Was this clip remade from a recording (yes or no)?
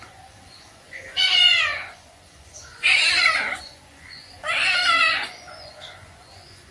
yes